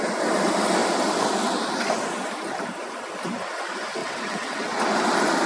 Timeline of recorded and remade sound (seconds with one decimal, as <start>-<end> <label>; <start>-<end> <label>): 0.0-4.0 recorded; 4.0-4.7 remade; 4.7-5.5 recorded